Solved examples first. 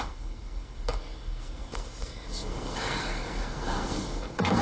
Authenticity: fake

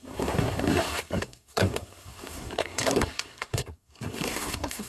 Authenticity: fake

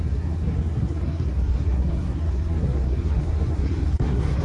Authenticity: fake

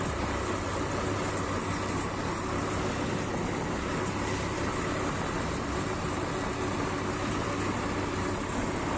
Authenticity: real